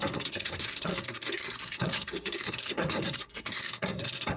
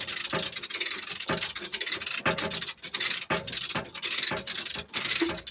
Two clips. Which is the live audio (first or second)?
second